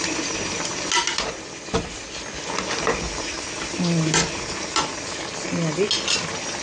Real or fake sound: real